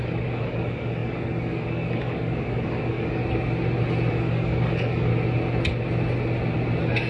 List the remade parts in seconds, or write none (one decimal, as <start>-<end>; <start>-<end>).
0.0-3.2; 4.1-5.1